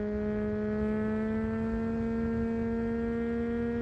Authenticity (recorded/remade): recorded